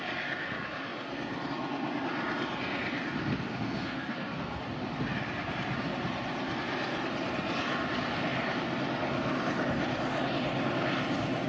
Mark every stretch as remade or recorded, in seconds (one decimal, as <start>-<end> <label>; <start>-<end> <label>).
0.0-3.3 recorded; 3.3-4.6 remade; 4.6-11.5 recorded